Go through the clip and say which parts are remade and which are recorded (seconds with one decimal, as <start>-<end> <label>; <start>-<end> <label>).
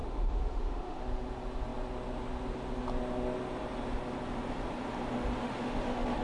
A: 0.0-1.0 remade; 1.0-5.4 recorded; 5.4-6.2 remade